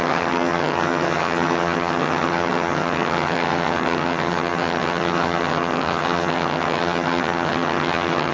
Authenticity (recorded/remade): remade